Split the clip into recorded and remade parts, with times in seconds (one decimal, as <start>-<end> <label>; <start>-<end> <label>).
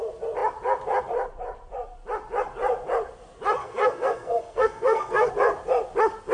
0.0-3.6 recorded; 3.6-5.3 remade; 5.3-6.3 recorded